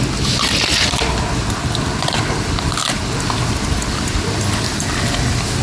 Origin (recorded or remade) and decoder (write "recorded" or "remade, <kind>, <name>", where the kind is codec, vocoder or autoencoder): recorded